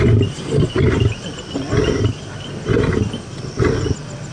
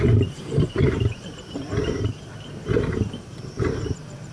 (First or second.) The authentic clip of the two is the first